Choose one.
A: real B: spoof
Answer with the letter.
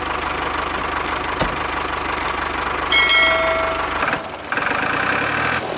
A